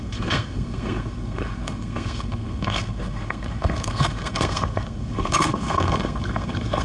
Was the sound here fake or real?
fake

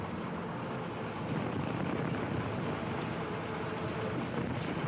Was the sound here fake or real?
real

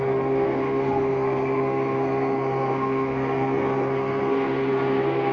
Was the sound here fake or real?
fake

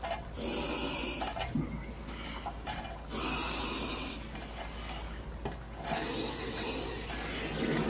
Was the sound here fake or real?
real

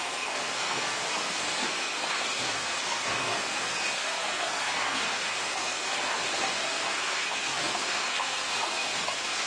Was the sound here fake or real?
fake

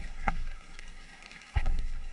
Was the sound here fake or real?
fake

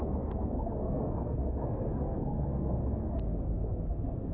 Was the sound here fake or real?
fake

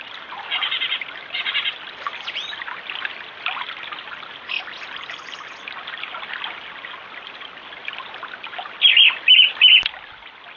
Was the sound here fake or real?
real